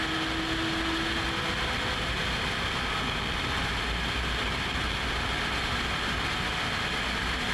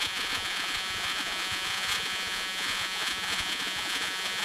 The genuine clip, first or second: first